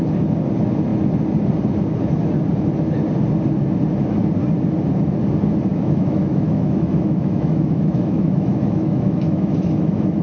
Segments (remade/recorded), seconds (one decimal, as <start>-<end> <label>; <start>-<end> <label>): 0.0-5.7 recorded; 5.7-10.2 remade